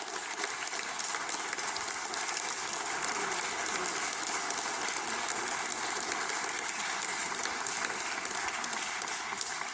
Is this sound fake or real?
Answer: real